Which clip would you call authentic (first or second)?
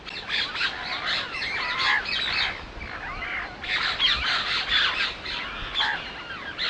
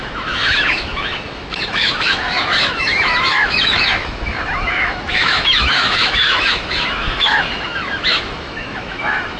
first